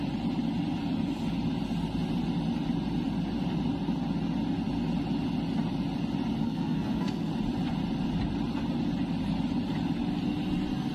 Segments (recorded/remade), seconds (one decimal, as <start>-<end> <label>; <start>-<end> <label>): 0.0-6.4 recorded; 6.4-7.3 remade; 7.3-10.9 recorded